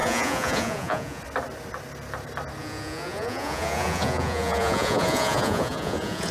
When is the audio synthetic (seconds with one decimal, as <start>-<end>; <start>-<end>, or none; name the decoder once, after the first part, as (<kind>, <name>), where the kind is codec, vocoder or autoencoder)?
0.0-1.2 (vocoder, Vocos); 2.6-6.3